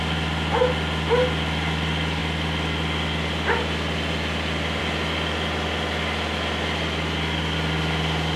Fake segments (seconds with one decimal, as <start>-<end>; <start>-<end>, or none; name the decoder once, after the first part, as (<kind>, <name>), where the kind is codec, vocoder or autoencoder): none